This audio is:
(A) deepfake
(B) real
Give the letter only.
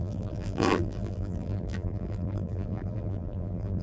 A